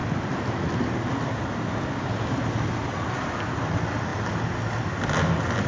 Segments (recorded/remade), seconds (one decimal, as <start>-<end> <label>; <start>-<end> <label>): 0.0-5.7 recorded